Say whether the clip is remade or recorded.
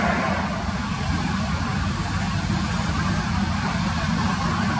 recorded